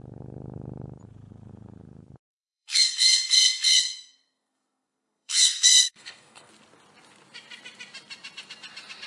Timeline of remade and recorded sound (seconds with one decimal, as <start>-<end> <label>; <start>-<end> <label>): 0.0-2.3 recorded; 2.3-6.5 remade; 6.5-9.1 recorded